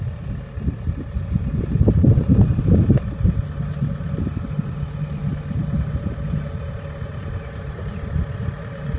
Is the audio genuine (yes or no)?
yes